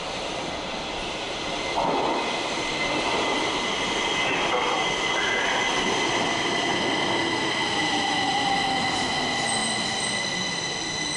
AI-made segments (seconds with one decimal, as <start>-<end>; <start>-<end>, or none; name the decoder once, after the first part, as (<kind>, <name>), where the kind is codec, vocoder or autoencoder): none